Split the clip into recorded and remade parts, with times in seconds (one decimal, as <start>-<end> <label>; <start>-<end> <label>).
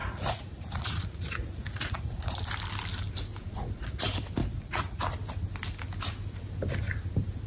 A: 0.0-2.4 remade; 2.4-3.4 recorded; 3.4-4.0 remade; 4.0-4.4 recorded; 4.4-5.0 remade; 5.0-7.5 recorded